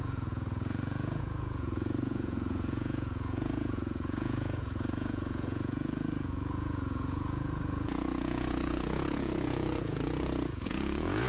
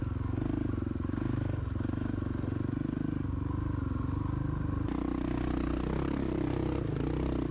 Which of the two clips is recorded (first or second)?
second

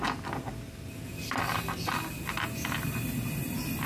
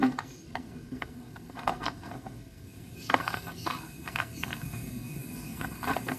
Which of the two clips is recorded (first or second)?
first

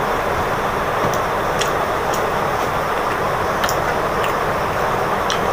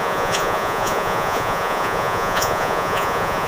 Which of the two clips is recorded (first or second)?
first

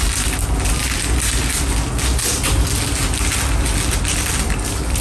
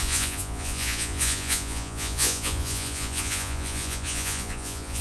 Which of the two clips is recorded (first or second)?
first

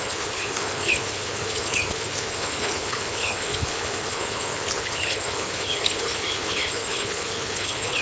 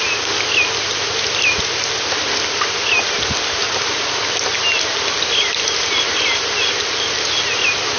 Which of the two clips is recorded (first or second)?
second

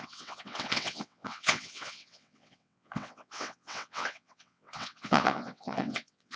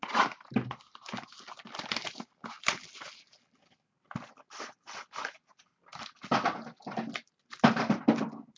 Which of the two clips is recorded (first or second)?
second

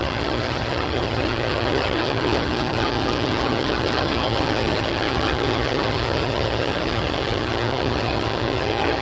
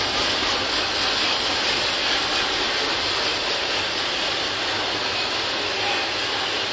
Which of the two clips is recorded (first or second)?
second